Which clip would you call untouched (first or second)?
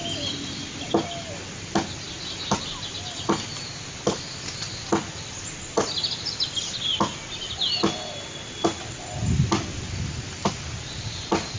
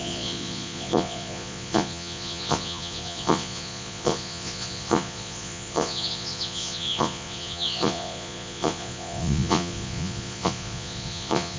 first